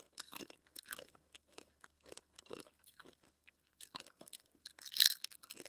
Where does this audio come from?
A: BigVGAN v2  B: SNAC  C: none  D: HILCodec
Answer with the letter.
B